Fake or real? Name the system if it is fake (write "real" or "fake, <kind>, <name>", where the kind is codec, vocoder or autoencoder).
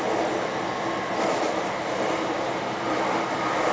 real